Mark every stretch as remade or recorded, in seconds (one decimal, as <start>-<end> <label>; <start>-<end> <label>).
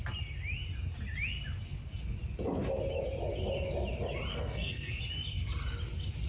0.0-4.3 recorded; 4.3-5.0 remade; 5.0-6.3 recorded